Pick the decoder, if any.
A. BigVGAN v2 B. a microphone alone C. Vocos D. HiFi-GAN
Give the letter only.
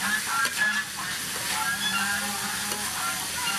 B